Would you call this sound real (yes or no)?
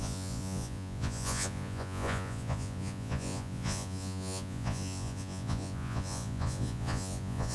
no